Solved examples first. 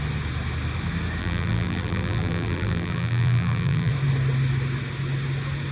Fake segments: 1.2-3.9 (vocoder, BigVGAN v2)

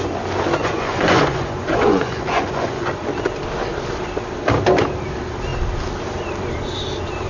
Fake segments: 0.6-2.9 (vocoder, Vocos)

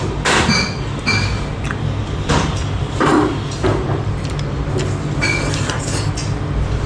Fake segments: 2.0-4.1 (vocoder, BigVGAN v2)